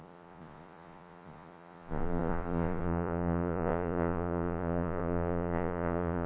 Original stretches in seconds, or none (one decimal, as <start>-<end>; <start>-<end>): none